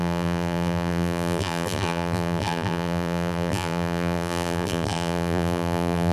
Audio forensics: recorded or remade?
remade